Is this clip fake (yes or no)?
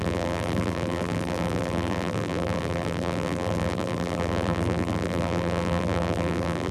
yes